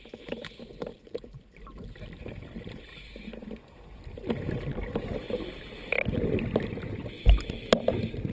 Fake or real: fake